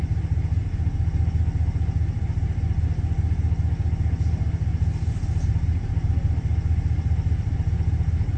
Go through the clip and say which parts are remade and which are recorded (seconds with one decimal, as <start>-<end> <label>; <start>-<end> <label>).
0.0-8.4 recorded